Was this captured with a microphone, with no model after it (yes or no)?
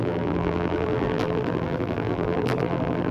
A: no